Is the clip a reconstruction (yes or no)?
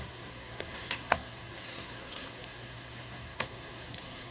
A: yes